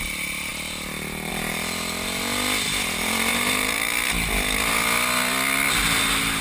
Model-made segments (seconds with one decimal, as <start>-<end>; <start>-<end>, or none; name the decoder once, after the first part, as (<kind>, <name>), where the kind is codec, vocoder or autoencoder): 3.3-4.1 (vocoder, BigVGAN v2)